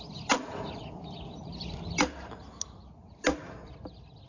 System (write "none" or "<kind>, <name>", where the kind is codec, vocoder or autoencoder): none